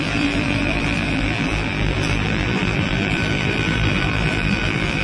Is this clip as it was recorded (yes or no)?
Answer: no